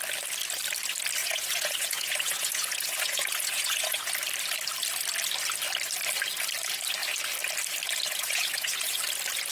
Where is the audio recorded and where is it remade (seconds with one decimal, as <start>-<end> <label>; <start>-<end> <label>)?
0.0-1.2 recorded; 1.2-4.1 remade; 4.1-8.1 recorded; 8.1-9.0 remade; 9.0-9.5 recorded